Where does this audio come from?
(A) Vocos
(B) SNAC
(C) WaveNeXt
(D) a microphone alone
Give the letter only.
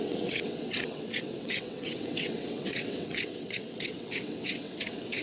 C